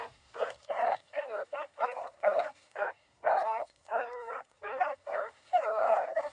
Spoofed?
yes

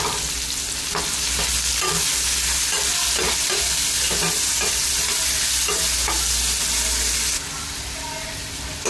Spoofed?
no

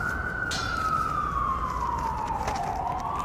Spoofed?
no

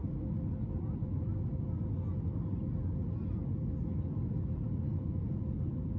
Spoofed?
no